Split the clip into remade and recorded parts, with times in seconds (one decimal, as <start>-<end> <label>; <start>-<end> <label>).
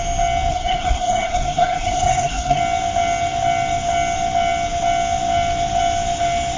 0.0-0.5 recorded; 0.5-2.6 remade; 2.6-6.6 recorded